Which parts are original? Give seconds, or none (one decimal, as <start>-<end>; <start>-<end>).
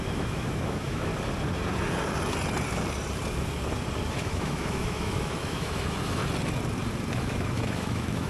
1.1-4.1; 6.2-7.1